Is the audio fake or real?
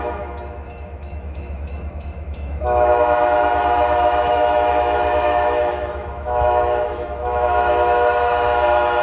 fake